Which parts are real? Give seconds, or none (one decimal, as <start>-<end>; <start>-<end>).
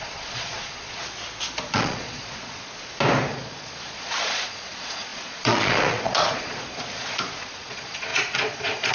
1.0-1.7; 2.7-3.3